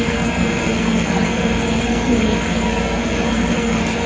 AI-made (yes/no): yes